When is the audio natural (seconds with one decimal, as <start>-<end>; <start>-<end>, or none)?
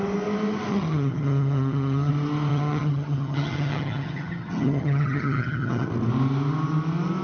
0.0-0.7; 2.1-2.5; 5.9-7.2